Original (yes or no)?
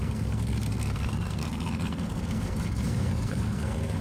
no